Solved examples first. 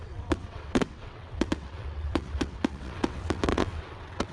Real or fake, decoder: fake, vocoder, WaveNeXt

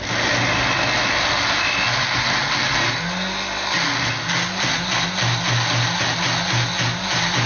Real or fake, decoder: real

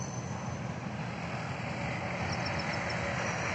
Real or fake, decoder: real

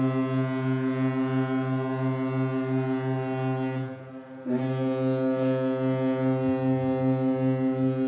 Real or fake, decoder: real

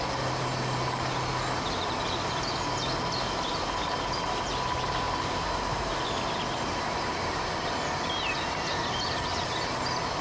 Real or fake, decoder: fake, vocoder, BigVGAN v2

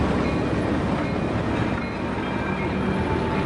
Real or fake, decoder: real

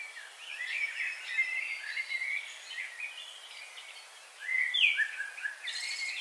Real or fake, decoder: real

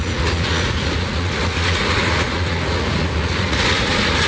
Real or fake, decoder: fake, vocoder, Vocos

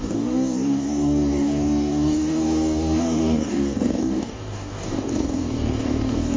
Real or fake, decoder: fake, codec, DAC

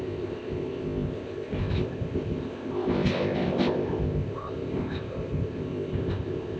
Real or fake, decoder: fake, codec, ZipCodec